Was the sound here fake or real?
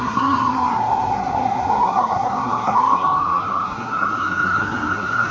fake